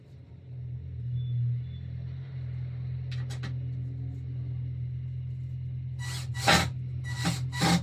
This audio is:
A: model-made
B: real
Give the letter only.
B